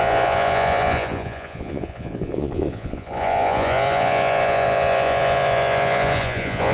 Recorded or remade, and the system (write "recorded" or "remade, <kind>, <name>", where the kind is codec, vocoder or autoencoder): remade, vocoder, Vocos